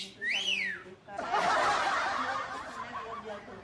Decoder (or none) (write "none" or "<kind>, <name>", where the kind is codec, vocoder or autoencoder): none